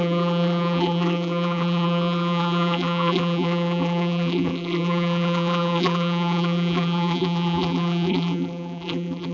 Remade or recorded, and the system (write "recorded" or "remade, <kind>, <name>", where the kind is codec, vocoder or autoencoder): remade, vocoder, BigVGAN v2